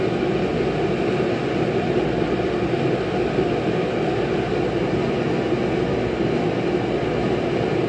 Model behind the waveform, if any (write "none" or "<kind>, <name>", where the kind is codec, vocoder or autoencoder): none